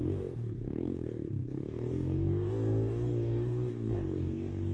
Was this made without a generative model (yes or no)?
no